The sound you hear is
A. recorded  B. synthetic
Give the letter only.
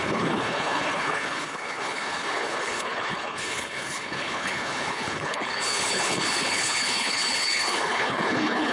B